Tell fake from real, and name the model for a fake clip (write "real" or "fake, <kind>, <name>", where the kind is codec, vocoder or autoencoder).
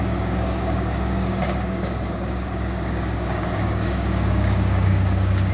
fake, codec, DAC